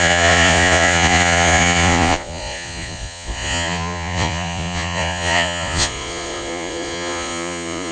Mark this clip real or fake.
fake